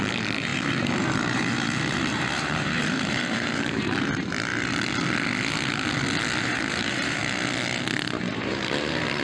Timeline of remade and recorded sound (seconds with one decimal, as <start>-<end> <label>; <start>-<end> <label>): 0.0-4.5 remade; 4.5-6.4 recorded; 6.4-7.2 remade; 7.2-8.3 recorded; 8.3-9.2 remade